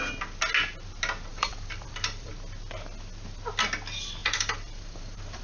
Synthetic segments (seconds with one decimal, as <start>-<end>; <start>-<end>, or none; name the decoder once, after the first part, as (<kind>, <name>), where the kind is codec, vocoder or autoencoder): 1.3-2.3 (vocoder, BigVGAN v2); 4.2-5.4